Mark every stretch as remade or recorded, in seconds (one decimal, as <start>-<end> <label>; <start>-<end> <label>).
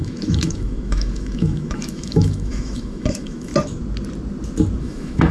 0.0-3.5 remade; 3.5-4.8 recorded; 4.8-5.3 remade